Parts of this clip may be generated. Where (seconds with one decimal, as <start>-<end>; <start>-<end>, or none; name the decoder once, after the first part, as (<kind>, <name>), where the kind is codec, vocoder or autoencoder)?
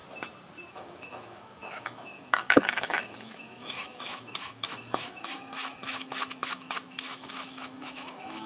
0.7-8.5 (autoencoder, DAC-VAE)